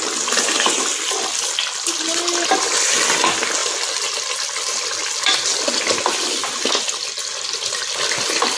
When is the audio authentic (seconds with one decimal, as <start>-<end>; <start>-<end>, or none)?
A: 0.0-8.6